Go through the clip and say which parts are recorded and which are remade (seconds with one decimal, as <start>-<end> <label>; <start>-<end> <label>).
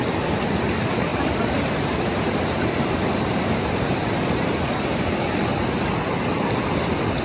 0.0-1.1 recorded; 1.1-4.7 remade; 4.7-7.2 recorded